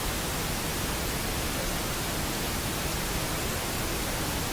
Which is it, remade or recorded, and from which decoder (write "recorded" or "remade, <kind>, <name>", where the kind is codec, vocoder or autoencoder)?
recorded